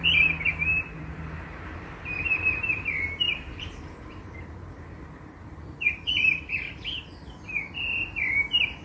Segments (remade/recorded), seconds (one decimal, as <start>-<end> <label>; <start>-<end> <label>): 0.0-0.7 recorded; 0.7-5.8 remade; 5.8-8.8 recorded